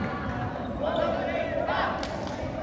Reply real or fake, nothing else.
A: real